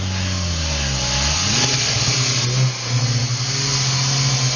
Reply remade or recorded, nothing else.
recorded